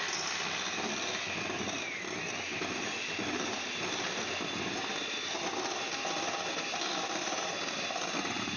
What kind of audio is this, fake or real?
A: real